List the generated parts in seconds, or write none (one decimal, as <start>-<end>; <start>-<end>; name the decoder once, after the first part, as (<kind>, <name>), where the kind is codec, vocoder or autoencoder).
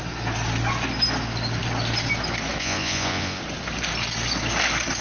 2.6-3.4 (vocoder, Vocos)